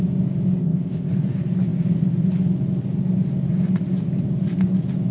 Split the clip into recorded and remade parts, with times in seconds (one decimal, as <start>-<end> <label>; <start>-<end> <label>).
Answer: 0.0-0.6 recorded; 0.6-1.1 remade; 1.1-5.1 recorded